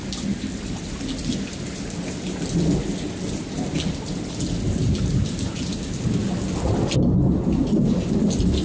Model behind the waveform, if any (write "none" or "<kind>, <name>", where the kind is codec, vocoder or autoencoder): none